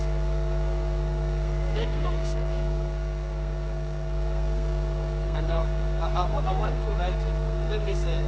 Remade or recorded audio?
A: remade